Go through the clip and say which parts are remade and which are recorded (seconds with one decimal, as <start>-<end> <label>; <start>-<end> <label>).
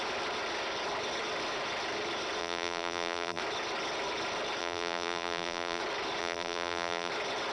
0.0-2.4 recorded; 2.4-3.4 remade; 3.4-4.6 recorded; 4.6-5.8 remade; 5.8-6.2 recorded; 6.2-7.1 remade; 7.1-7.5 recorded